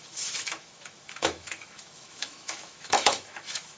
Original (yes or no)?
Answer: no